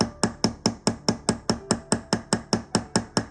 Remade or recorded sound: recorded